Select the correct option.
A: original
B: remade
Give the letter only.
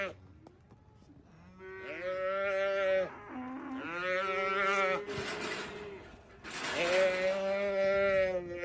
A